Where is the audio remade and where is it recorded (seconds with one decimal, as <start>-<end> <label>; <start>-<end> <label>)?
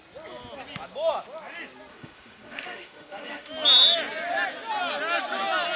0.0-1.9 recorded; 1.9-3.5 remade; 3.5-5.8 recorded